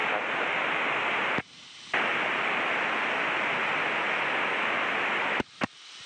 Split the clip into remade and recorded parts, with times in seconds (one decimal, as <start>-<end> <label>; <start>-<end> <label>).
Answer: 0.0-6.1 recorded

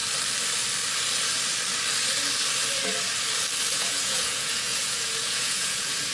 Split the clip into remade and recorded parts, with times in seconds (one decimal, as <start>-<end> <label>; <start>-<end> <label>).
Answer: 0.0-3.7 recorded; 3.7-6.1 remade

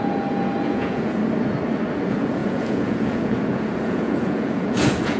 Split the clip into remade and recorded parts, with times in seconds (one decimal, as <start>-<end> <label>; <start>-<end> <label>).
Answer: 0.0-1.2 remade; 1.2-1.9 recorded; 1.9-5.2 remade

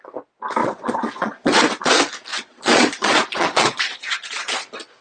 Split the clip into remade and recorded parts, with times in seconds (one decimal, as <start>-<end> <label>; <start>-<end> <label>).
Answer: 0.0-0.6 recorded; 0.6-1.9 remade; 1.9-2.3 recorded; 2.3-4.5 remade; 4.5-5.0 recorded

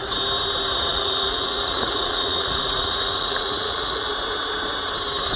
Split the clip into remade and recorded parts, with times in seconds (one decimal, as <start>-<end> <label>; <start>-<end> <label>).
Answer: 0.0-0.9 recorded; 0.9-4.1 remade; 4.1-5.4 recorded